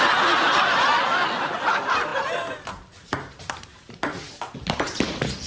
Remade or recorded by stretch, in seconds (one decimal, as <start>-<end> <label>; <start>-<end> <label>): 0.0-5.5 recorded